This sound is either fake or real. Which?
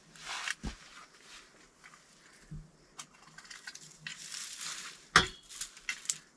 real